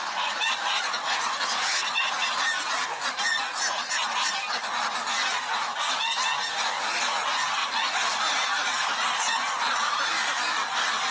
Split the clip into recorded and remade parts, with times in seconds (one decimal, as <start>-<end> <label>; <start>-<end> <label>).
0.0-4.3 remade; 4.3-7.6 recorded; 7.6-10.1 remade; 10.1-11.1 recorded